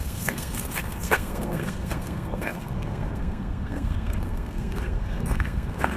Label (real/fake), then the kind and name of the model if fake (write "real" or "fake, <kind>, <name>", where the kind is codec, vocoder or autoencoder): fake, codec, SNAC